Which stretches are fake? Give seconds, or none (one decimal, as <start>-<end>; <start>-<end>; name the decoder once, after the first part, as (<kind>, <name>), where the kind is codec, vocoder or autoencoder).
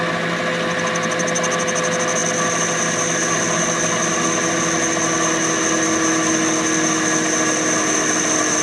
none